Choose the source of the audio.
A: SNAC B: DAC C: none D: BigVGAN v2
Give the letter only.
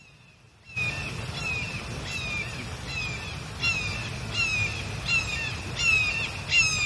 C